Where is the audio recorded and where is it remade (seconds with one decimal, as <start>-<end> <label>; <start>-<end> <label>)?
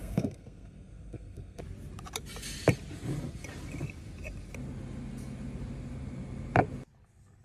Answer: 0.0-1.6 remade; 1.6-7.4 recorded